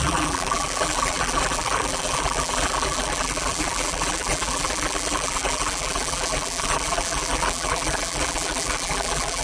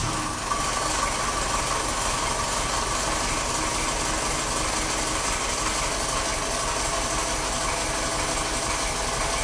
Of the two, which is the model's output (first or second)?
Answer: first